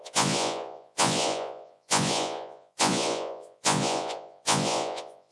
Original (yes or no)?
no